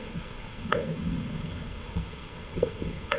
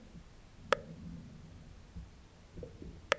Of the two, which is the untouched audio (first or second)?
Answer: second